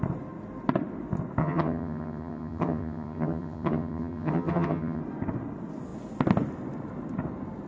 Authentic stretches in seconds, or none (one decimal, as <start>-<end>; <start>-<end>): 0.0-1.4; 5.0-7.7

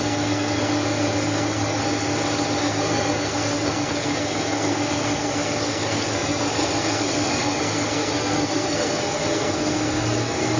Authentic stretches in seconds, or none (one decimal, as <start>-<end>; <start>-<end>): 1.8-2.6

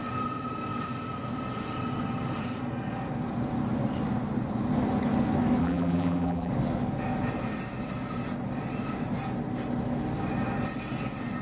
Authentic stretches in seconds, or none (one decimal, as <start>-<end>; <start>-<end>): 0.0-5.6; 6.5-11.4

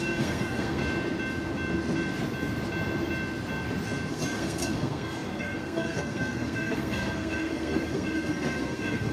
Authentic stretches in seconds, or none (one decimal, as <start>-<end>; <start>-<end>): 0.8-4.1

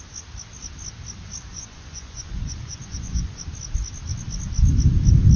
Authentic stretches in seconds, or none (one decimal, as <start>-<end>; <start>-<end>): 0.0-1.5; 3.4-5.4

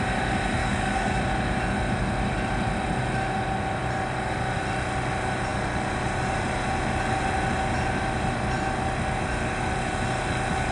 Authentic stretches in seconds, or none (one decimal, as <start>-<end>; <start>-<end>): 0.0-0.6; 1.2-10.7

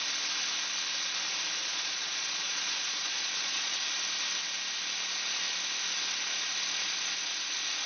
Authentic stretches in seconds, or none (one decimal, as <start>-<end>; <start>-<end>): 0.0-1.6; 3.8-7.9

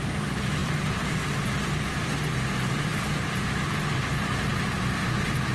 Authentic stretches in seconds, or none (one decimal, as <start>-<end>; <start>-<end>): 0.0-0.6; 1.9-2.9; 3.6-4.5